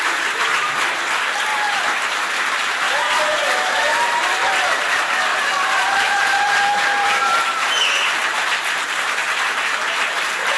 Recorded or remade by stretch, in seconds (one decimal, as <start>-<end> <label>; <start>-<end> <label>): 0.0-10.6 remade